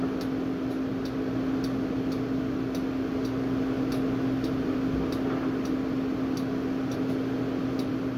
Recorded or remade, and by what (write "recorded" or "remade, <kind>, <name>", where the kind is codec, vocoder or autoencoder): recorded